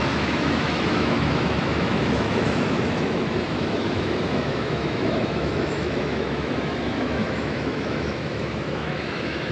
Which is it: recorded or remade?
remade